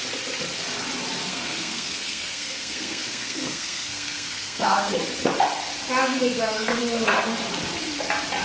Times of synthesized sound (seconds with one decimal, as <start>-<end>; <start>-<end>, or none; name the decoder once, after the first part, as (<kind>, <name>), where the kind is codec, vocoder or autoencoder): 1.3-5.0 (codec, SNAC); 6.0-6.8